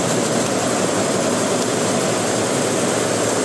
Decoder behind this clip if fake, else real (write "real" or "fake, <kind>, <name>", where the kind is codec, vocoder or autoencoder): real